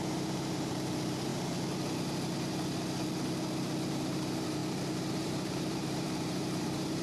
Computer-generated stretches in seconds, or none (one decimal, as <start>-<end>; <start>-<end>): 0.0-1.3; 3.9-4.6; 5.1-7.0

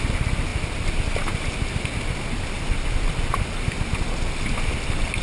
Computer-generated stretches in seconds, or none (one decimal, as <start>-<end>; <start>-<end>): none

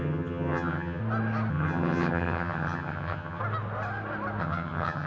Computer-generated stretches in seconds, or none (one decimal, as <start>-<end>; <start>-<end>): 0.0-1.0; 1.5-3.4; 4.4-5.1

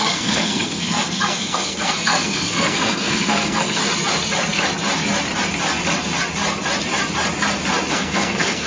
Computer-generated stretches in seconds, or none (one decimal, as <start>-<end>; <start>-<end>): 0.0-3.8; 7.9-8.7

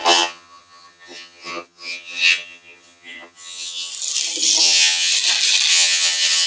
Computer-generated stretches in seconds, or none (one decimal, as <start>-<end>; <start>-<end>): 0.0-3.9; 4.6-5.1; 5.7-6.5